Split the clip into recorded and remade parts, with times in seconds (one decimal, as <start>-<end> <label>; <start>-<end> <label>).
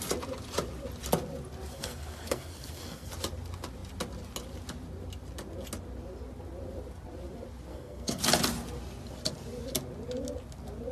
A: 0.0-1.7 recorded; 1.7-3.1 remade; 3.1-7.7 recorded; 7.7-8.2 remade; 8.2-10.9 recorded